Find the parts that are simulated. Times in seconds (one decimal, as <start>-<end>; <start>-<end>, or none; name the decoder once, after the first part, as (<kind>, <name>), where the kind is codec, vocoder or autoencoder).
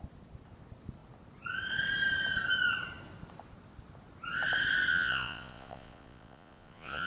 4.9-7.1 (vocoder, Vocos)